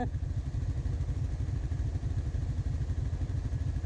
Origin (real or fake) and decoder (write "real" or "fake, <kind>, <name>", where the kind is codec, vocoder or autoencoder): real